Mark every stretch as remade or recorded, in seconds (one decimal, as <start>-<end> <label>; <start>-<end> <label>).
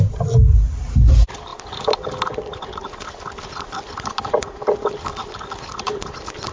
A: 0.0-6.5 recorded